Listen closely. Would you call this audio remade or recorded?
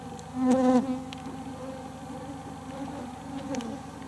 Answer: recorded